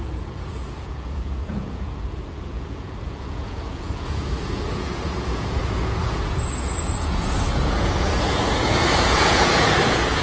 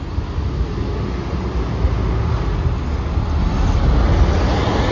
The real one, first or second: second